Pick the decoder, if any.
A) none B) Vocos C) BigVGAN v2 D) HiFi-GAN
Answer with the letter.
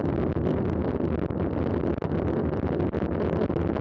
A